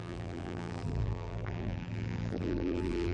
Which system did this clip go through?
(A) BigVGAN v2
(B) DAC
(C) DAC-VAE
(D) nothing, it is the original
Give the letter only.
A